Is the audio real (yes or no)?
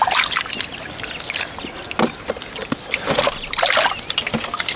yes